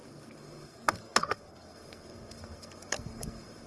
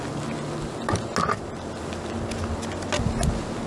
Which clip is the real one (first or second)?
second